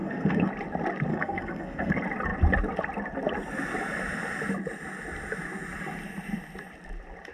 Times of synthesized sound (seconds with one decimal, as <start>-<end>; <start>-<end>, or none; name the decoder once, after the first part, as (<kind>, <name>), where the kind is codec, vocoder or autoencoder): 0.0-0.5 (codec, SNAC); 1.1-1.9